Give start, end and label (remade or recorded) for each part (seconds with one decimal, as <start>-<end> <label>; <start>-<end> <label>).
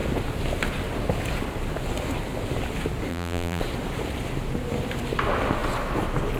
0.0-3.1 recorded; 3.1-3.6 remade; 3.6-6.4 recorded